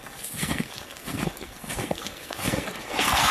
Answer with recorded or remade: remade